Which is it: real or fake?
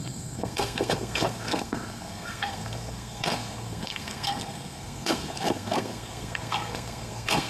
fake